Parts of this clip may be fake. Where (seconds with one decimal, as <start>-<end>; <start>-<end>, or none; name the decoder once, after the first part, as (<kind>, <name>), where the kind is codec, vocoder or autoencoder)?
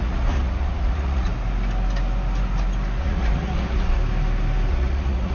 0.0-1.3 (vocoder, Vocos); 3.0-4.0; 4.7-5.3